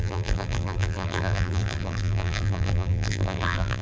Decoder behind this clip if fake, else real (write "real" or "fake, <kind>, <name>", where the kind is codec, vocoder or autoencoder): fake, vocoder, BigVGAN v2